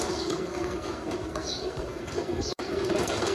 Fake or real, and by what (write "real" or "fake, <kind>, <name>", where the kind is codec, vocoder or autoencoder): fake, codec, SNAC